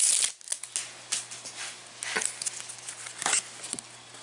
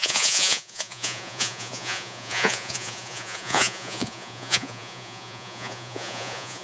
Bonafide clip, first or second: first